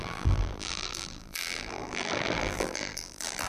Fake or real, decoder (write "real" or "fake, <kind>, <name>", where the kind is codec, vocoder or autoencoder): fake, vocoder, BigVGAN v2